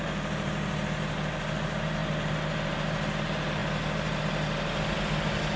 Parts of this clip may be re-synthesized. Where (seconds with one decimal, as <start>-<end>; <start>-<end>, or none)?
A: none